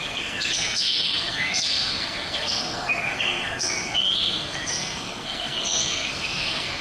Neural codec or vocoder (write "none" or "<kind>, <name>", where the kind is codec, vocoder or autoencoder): codec, SNAC